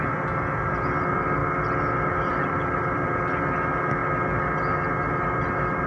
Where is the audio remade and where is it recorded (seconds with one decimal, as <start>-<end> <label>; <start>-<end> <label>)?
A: 0.0-5.9 recorded